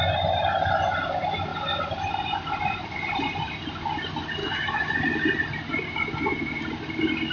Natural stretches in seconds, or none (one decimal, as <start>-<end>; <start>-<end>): 0.0-4.4; 4.9-7.3